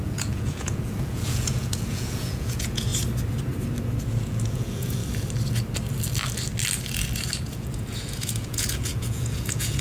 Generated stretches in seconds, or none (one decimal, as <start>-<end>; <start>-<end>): 0.0-2.9; 4.0-5.0; 7.4-9.8